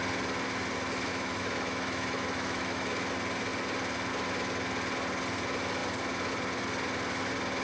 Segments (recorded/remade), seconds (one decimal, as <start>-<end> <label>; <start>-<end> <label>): 0.0-1.1 recorded; 1.1-3.1 remade; 3.1-7.6 recorded